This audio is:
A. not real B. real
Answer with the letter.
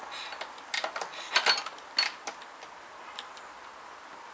B